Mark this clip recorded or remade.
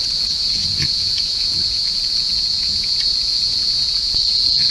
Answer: remade